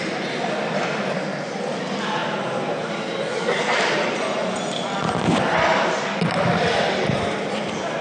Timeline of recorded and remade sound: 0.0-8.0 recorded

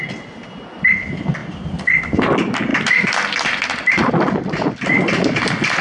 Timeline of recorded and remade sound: 0.0-5.8 recorded

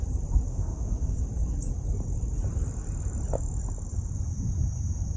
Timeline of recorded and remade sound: 0.0-0.5 recorded; 0.5-1.2 remade; 1.2-5.2 recorded

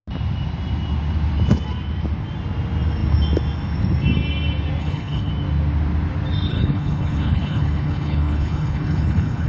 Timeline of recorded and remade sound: 0.0-4.8 recorded; 4.8-5.3 remade; 5.3-6.5 recorded; 6.5-9.5 remade